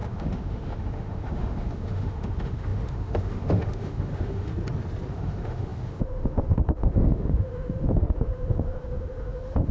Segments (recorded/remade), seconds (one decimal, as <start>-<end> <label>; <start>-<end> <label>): 0.0-4.5 remade; 4.5-5.1 recorded; 5.1-9.7 remade